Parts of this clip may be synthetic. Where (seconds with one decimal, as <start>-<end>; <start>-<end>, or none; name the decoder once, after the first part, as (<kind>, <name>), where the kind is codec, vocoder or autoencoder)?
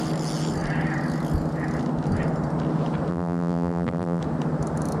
3.1-4.2 (vocoder, BigVGAN v2)